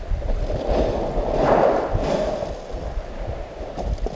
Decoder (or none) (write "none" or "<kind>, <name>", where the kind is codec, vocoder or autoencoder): none